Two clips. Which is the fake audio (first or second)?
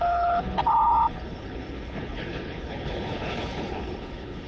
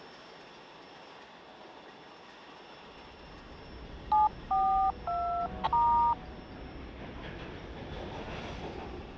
first